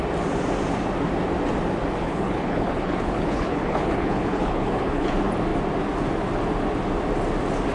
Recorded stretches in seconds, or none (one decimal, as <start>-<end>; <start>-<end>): 0.0-2.0; 5.1-7.7